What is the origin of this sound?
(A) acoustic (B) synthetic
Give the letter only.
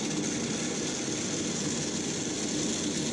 A